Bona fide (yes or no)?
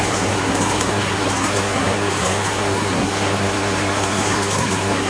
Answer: no